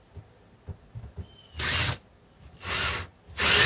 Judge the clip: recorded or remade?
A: recorded